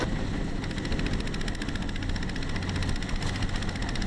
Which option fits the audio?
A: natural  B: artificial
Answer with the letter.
A